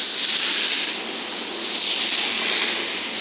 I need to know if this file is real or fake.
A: real